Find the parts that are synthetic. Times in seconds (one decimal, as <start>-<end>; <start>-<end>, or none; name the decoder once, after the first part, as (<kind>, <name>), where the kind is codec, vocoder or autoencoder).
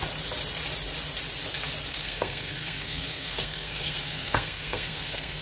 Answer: 1.9-5.4 (codec, SNAC)